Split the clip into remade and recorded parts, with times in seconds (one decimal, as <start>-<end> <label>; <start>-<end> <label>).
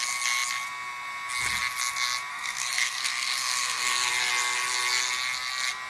0.0-2.3 recorded; 2.3-4.1 remade; 4.1-5.9 recorded